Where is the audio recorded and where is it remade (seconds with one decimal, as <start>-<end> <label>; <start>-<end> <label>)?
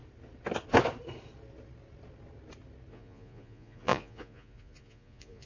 0.0-2.9 recorded; 2.9-5.5 remade